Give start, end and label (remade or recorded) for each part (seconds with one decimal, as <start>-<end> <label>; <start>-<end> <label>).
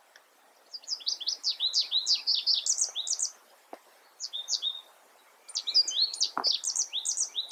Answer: 0.0-7.5 recorded